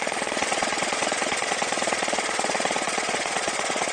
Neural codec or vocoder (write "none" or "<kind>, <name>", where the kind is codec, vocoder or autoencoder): vocoder, Vocos